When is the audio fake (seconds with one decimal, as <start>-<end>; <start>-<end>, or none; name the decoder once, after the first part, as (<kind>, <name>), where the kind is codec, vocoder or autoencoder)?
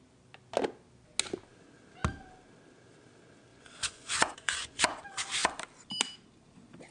3.5-5.0 (vocoder, Vocos)